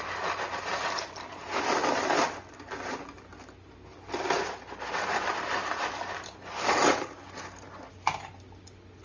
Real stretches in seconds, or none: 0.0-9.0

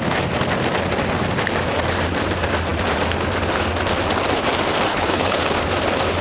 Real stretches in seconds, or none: 0.0-4.9; 5.4-6.2